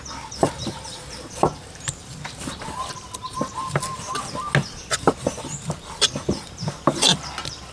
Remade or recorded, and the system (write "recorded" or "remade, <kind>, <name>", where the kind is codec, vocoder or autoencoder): recorded